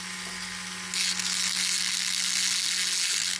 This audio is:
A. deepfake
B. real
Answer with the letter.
B